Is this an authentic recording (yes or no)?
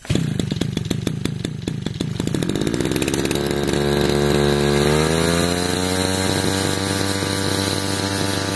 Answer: yes